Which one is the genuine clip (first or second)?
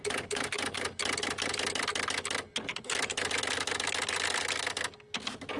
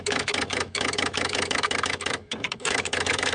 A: first